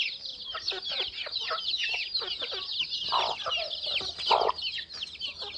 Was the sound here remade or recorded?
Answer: recorded